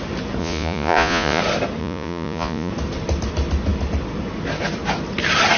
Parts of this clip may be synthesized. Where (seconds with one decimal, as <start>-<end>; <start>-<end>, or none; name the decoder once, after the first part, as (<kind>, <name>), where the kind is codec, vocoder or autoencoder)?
0.4-1.4 (vocoder, Vocos); 1.8-2.7